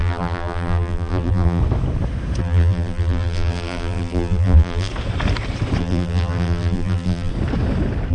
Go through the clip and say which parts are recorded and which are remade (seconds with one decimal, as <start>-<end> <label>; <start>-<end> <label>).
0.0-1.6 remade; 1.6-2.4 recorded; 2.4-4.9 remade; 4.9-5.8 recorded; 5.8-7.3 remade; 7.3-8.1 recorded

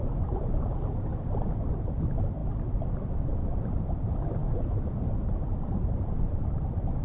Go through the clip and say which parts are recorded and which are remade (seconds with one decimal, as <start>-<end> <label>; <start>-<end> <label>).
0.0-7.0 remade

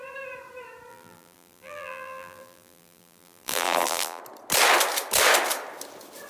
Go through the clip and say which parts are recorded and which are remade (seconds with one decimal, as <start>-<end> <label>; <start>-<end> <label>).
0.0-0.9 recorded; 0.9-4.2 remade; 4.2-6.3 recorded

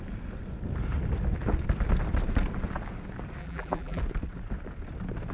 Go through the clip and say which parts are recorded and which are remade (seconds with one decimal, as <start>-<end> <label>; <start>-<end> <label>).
0.0-3.4 recorded; 3.4-4.0 remade; 4.0-5.3 recorded

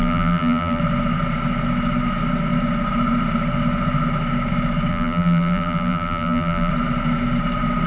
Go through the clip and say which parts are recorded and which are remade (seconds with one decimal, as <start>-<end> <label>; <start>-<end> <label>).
0.0-0.8 remade; 0.8-4.9 recorded; 4.9-6.7 remade; 6.7-7.9 recorded

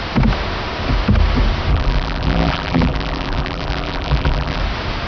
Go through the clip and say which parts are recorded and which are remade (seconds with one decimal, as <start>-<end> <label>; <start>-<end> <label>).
0.0-1.7 recorded; 1.7-4.6 remade; 4.6-5.1 recorded

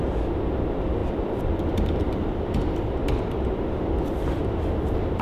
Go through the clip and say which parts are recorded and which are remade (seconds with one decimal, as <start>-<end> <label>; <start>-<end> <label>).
0.0-1.0 recorded; 1.0-2.9 remade; 2.9-5.2 recorded